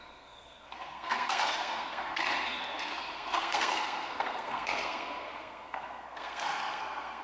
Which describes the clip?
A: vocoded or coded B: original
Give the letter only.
A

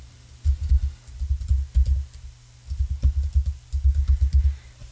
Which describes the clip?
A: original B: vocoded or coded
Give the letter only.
A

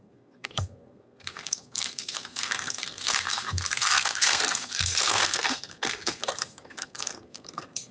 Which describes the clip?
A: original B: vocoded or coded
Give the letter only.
B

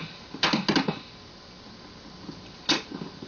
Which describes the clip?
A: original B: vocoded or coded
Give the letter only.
A